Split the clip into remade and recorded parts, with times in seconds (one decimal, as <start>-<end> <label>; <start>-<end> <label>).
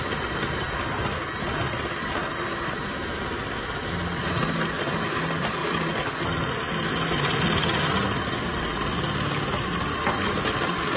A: 0.0-11.0 recorded